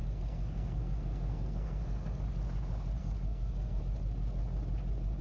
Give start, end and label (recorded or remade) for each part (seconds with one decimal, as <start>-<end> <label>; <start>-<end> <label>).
0.0-2.2 remade; 2.2-3.0 recorded; 3.0-3.8 remade; 3.8-5.2 recorded